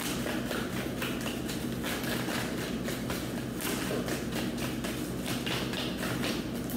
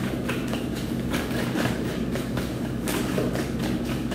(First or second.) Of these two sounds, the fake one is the second